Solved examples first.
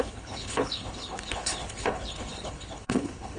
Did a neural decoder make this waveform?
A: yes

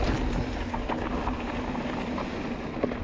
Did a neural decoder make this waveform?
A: no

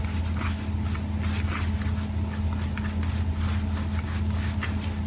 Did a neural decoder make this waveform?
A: no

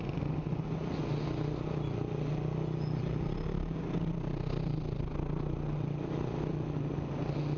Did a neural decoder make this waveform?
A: no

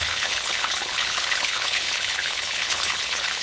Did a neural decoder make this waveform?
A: yes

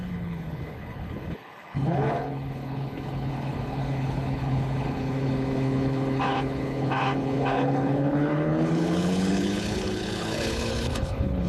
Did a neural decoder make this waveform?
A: yes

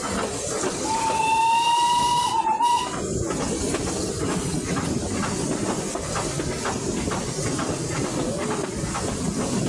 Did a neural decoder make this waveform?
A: no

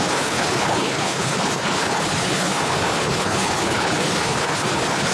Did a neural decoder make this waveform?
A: yes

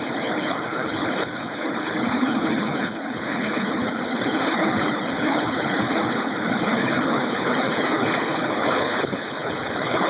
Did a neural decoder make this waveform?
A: yes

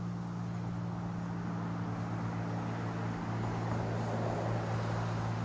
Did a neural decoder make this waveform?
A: no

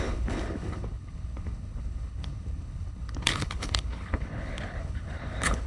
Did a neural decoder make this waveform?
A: yes